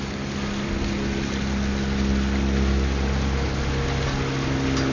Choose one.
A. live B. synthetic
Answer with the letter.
A